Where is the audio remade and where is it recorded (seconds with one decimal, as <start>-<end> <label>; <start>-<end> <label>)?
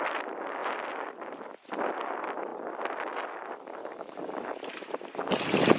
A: 0.0-3.8 recorded; 3.8-4.6 remade; 4.6-5.8 recorded